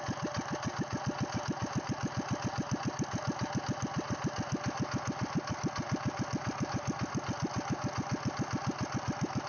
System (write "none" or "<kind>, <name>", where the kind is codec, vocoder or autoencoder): none